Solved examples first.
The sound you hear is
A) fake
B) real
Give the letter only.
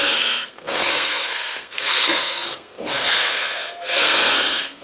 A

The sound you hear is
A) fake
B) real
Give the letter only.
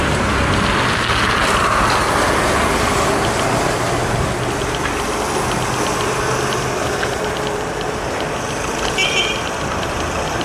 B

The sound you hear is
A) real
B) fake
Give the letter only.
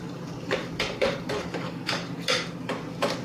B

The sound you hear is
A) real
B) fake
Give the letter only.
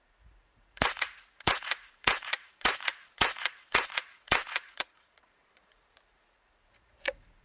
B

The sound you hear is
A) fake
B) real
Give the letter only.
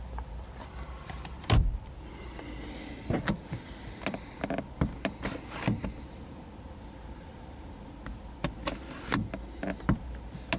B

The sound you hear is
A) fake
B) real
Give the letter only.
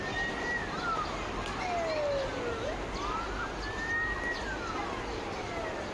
B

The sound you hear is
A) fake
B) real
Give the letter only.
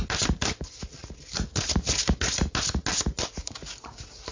B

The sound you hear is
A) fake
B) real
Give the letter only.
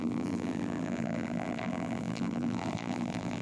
A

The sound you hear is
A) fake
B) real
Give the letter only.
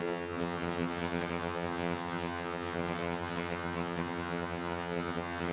A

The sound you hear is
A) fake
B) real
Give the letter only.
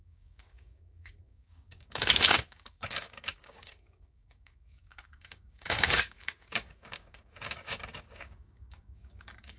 A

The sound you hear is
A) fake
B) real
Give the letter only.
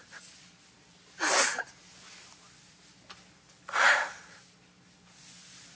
B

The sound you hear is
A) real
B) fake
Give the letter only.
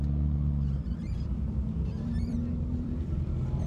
B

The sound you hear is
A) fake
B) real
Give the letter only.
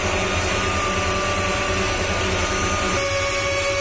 B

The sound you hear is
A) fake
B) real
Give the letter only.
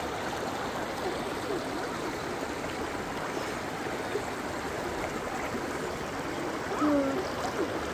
B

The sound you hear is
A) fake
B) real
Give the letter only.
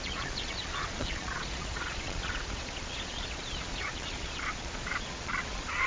A